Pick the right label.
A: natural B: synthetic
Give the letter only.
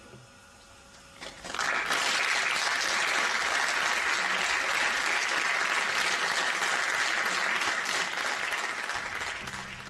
A